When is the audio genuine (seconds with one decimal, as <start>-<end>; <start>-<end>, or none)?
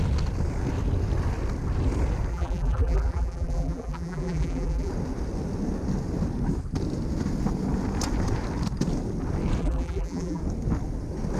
0.0-2.3; 4.9-9.6; 10.4-11.4